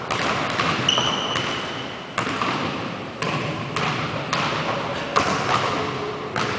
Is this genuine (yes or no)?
yes